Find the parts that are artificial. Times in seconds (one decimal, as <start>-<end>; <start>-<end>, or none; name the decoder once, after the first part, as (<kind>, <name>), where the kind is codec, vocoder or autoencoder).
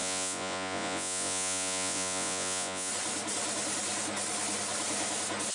0.0-2.9 (vocoder, Vocos)